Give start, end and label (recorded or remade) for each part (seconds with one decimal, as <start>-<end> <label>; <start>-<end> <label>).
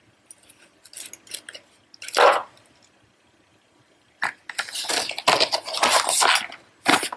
0.0-7.2 recorded